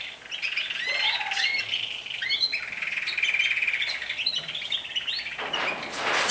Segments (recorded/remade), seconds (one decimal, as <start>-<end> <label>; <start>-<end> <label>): 0.0-6.3 recorded